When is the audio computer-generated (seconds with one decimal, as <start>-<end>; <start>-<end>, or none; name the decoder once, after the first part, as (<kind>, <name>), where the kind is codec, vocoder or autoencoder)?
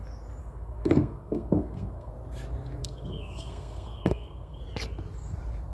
0.4-2.1 (codec, SNAC); 2.8-4.6